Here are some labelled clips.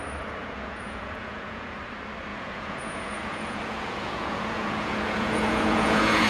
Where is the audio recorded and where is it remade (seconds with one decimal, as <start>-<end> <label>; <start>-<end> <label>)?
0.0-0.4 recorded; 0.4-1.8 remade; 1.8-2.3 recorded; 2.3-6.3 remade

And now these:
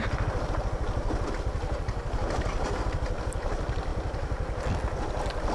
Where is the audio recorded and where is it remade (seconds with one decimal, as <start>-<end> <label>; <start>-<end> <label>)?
0.0-5.5 recorded

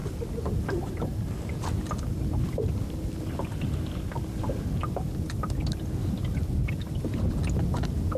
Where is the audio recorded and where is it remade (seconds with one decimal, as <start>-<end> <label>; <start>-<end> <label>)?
0.0-8.2 recorded

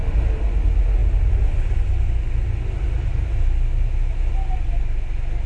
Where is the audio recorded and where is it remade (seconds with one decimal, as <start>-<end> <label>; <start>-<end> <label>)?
0.0-5.5 recorded

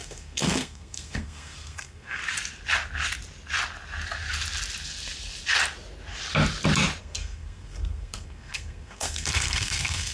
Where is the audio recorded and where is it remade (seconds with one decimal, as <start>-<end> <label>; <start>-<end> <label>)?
0.0-2.2 remade; 2.2-7.0 recorded; 7.0-10.1 remade

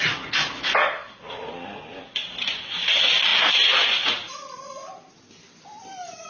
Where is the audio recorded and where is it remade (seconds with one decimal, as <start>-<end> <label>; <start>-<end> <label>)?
0.0-6.3 recorded